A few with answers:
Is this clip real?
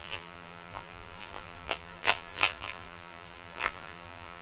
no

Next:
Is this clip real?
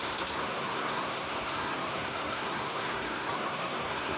no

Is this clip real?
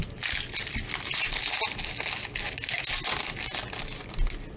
yes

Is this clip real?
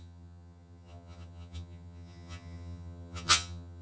no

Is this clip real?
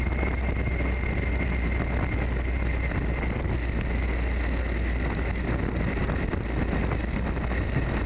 yes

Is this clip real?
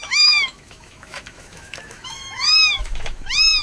no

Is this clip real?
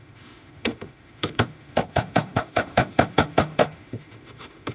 no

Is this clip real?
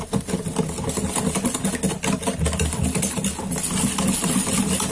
yes